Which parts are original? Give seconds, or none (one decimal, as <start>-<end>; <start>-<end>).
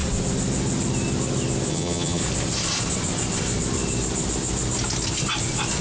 0.0-1.7; 2.2-5.8